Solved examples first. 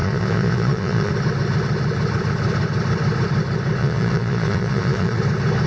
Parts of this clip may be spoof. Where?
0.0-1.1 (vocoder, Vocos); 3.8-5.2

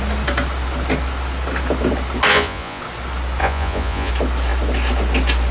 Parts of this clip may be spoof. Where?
2.3-2.8 (vocoder, Vocos); 3.4-4.1

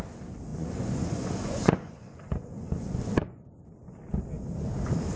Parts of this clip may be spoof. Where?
0.5-3.6 (vocoder, Vocos)

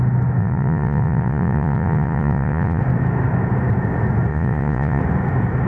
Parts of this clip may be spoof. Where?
0.4-2.8 (vocoder, Vocos); 4.3-5.0

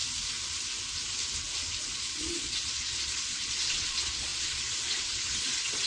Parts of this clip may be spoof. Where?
1.8-5.9 (vocoder, Vocos)

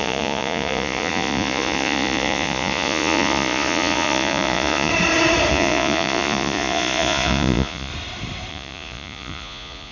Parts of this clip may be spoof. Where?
0.0-4.9 (vocoder, Vocos); 5.5-7.9; 8.5-9.9